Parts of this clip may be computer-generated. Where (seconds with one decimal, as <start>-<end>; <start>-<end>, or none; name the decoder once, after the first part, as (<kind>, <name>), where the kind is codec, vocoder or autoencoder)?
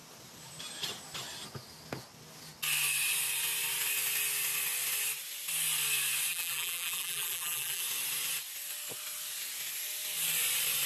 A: 6.3-7.8 (vocoder, BigVGAN v2)